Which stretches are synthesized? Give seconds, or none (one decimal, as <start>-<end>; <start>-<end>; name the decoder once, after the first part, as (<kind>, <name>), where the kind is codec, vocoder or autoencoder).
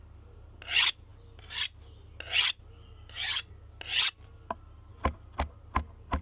none